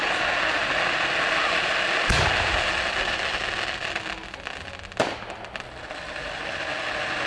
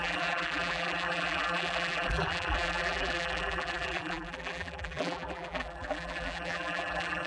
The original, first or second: first